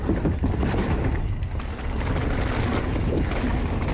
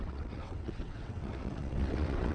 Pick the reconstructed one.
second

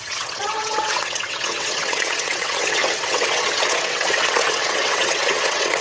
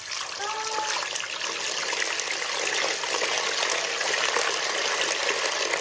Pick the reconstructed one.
first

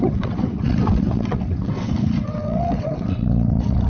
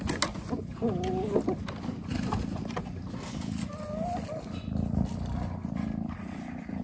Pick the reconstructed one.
first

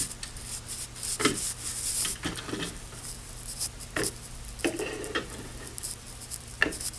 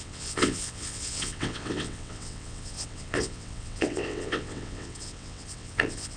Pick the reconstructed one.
second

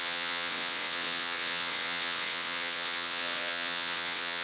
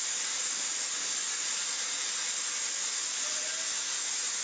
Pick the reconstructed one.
first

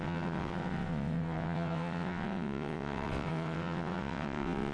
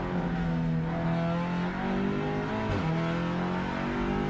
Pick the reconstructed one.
first